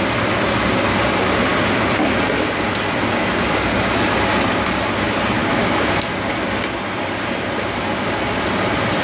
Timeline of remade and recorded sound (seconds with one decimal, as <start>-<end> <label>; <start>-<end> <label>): 0.0-5.4 recorded; 5.4-6.3 remade; 6.3-9.0 recorded